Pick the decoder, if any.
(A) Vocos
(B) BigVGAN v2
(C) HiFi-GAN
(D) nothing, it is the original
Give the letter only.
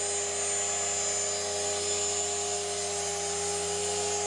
D